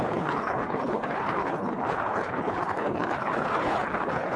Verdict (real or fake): fake